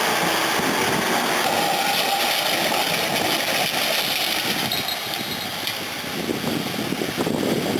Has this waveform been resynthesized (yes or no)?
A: no